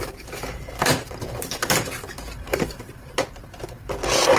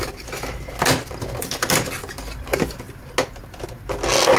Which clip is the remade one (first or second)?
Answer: first